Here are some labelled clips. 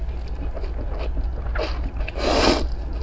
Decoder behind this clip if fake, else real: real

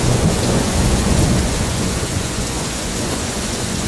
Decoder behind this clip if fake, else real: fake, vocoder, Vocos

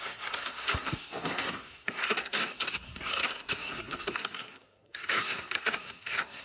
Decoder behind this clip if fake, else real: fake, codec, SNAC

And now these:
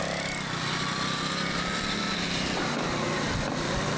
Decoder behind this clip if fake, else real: fake, vocoder, BigVGAN v2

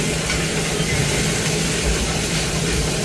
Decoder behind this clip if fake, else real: real